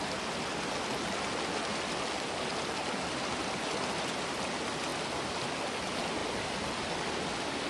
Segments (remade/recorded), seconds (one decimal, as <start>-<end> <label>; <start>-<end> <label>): 0.0-7.7 recorded

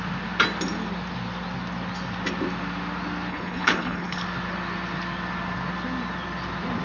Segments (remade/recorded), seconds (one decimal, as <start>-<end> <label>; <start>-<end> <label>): 0.0-3.3 recorded; 3.3-4.2 remade; 4.2-6.8 recorded

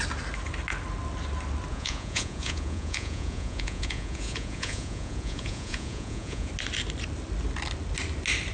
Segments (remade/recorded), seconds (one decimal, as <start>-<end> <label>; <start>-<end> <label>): 0.0-1.7 recorded; 1.7-6.5 remade; 6.5-8.5 recorded

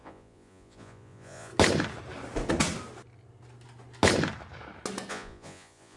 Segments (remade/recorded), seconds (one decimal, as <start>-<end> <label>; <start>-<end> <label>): 0.0-1.5 remade; 1.5-5.1 recorded; 5.1-6.0 remade